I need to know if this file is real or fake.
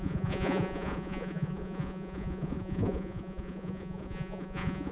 fake